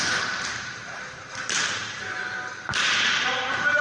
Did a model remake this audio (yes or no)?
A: yes